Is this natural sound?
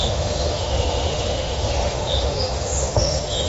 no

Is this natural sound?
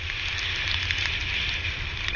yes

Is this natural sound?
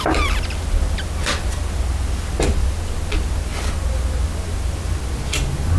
yes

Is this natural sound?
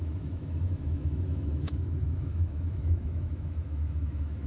no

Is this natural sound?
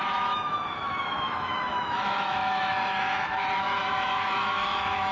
no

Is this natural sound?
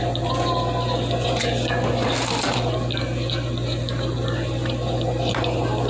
yes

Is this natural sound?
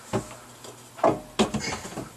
yes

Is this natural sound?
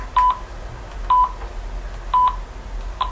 yes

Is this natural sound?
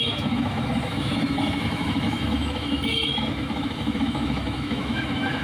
no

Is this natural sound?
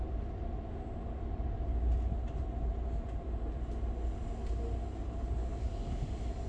yes